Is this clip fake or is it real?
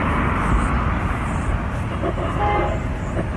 real